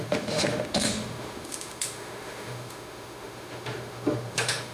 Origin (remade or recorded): remade